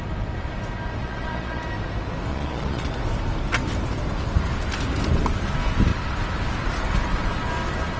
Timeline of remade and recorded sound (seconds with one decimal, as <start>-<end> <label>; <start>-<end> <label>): 0.0-1.0 recorded; 1.0-1.6 remade; 1.6-2.3 recorded; 2.3-2.9 remade; 2.9-8.0 recorded

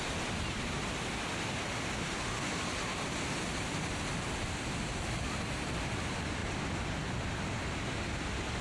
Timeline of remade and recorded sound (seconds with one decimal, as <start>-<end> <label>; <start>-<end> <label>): 0.0-8.6 recorded